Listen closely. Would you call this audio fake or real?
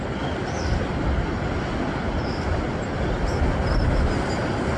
real